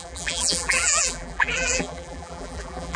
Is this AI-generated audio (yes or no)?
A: yes